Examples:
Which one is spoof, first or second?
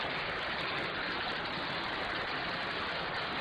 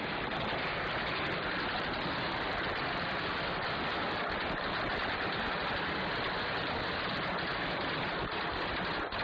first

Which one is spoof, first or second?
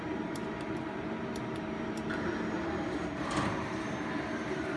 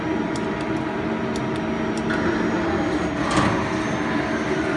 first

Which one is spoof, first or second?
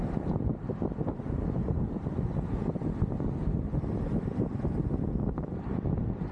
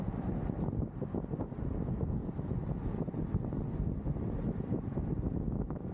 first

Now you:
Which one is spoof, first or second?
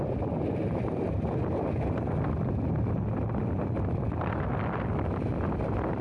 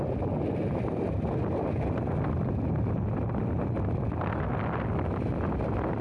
first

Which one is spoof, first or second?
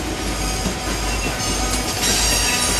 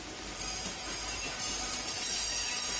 second